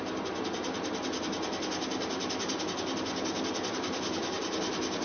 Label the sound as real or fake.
real